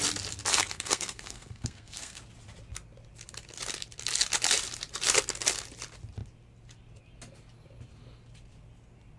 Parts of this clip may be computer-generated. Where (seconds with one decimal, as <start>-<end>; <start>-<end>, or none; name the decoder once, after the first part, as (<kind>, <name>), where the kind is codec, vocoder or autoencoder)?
0.5-2.2 (codec, SNAC)